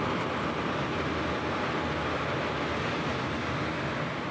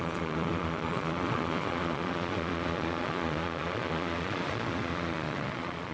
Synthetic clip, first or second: second